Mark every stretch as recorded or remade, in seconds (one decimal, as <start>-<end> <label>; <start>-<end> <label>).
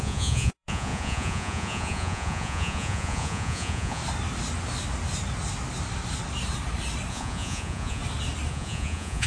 0.0-4.0 remade; 4.0-7.1 recorded; 7.1-8.0 remade; 8.0-8.5 recorded; 8.5-9.3 remade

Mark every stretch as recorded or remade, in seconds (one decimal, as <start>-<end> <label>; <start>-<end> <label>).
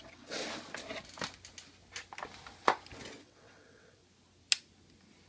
0.0-0.4 remade; 0.4-3.2 recorded; 3.2-4.0 remade; 4.0-5.3 recorded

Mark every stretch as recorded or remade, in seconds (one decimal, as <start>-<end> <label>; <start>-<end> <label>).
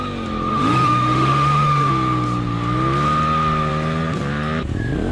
0.0-0.5 recorded; 0.5-1.9 remade; 1.9-5.1 recorded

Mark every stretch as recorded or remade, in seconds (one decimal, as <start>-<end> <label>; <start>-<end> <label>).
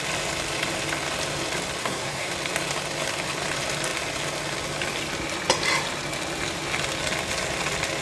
0.0-1.8 recorded; 1.8-2.3 remade; 2.3-8.0 recorded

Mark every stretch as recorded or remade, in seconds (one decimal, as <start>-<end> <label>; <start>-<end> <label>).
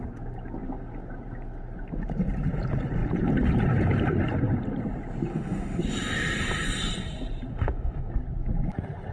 0.0-5.3 recorded; 5.3-5.8 remade; 5.8-7.5 recorded; 7.5-8.1 remade; 8.1-9.1 recorded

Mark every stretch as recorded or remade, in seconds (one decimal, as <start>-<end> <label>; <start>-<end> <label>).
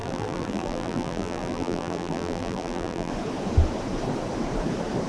0.0-3.1 remade; 3.1-5.1 recorded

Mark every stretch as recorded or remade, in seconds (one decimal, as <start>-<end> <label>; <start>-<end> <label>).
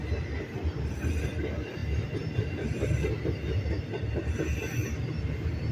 0.0-5.7 recorded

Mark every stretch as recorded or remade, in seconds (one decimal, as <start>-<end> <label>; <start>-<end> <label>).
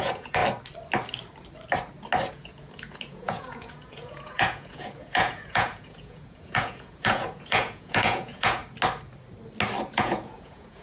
0.0-0.4 remade; 0.4-2.3 recorded; 2.3-8.6 remade; 8.6-9.9 recorded; 9.9-10.8 remade